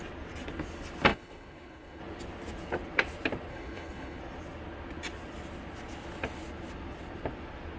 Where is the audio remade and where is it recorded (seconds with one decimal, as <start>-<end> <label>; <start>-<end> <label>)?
0.0-1.1 recorded; 1.1-2.0 remade; 2.0-3.5 recorded; 3.5-4.2 remade; 4.2-7.8 recorded